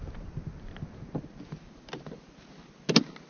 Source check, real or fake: real